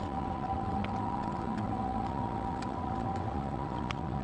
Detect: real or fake fake